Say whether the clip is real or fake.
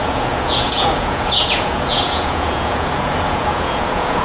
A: fake